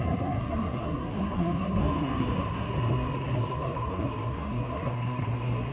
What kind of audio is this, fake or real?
fake